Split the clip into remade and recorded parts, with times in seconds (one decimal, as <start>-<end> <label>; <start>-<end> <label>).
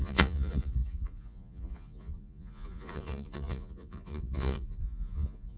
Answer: 0.0-5.6 remade